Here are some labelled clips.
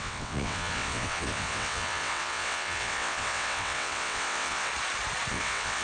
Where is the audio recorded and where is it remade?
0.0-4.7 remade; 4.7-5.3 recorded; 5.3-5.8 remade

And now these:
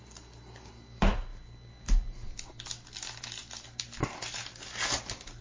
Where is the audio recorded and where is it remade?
0.0-5.4 recorded

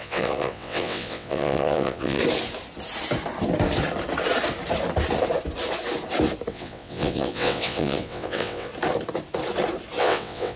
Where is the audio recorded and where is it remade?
0.0-2.2 remade; 2.2-6.5 recorded; 6.5-8.7 remade; 8.7-10.0 recorded; 10.0-10.6 remade